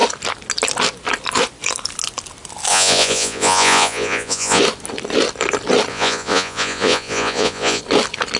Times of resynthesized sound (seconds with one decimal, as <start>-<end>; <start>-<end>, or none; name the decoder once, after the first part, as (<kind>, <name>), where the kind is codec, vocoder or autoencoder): 2.7-4.6 (vocoder, Vocos); 5.9-7.8